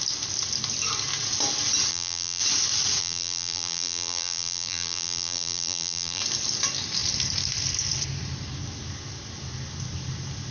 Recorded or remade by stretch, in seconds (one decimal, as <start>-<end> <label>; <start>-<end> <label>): 0.0-1.9 recorded; 1.9-2.4 remade; 2.4-3.0 recorded; 3.0-6.2 remade; 6.2-10.5 recorded